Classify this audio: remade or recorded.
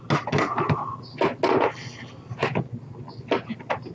recorded